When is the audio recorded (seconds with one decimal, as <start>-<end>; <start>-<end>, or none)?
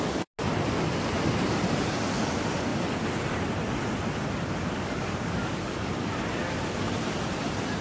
0.0-4.6; 5.9-7.8